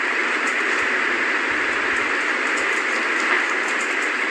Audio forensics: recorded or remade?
recorded